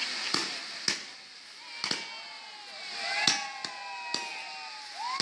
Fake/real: real